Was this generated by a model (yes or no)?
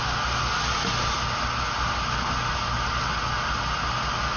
no